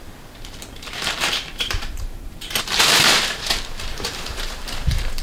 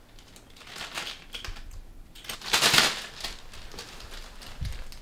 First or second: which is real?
second